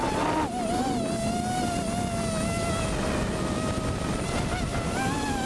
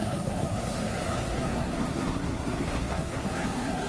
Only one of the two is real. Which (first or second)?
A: first